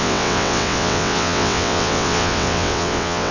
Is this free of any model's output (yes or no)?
no